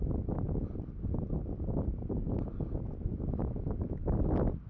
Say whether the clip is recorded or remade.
recorded